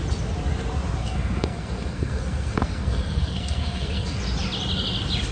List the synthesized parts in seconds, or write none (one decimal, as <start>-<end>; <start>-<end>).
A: 1.0-4.2